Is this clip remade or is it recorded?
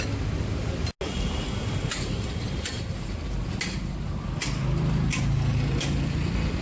recorded